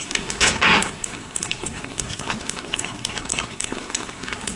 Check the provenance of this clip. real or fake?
fake